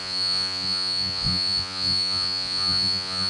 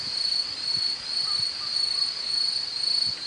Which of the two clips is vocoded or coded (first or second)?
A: first